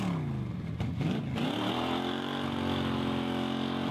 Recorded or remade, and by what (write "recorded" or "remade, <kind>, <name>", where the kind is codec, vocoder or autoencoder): recorded